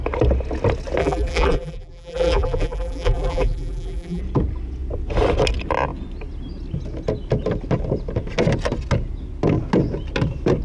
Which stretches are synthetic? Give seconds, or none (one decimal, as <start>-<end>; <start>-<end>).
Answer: 1.0-4.2